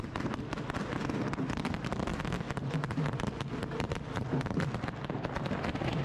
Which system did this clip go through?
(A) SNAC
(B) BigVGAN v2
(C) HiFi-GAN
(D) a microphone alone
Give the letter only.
D